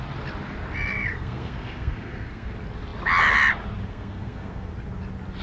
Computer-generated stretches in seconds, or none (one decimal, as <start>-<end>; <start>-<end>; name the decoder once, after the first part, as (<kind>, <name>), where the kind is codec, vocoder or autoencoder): 1.1-2.5 (codec, SNAC); 3.9-4.7